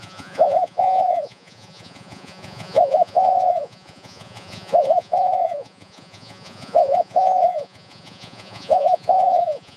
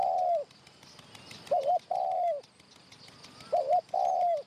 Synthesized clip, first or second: first